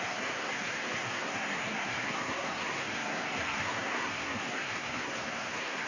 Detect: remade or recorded remade